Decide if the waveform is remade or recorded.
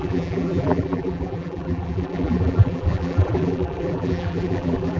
remade